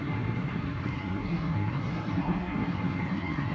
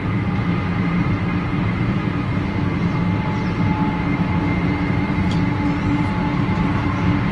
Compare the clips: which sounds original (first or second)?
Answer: second